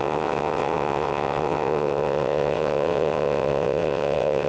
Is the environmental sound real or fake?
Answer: fake